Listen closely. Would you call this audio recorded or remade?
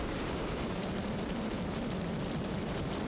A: remade